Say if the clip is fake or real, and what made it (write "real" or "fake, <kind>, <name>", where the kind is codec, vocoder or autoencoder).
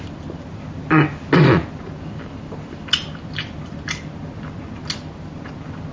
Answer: real